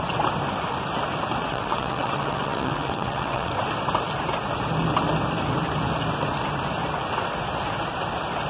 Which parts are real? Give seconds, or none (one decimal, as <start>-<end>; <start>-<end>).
0.0-1.4; 3.5-8.5